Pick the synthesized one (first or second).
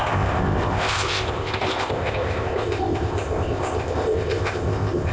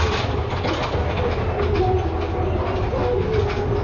first